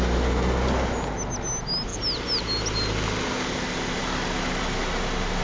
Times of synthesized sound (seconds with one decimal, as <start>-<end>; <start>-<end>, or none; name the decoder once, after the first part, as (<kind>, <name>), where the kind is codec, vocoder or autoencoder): none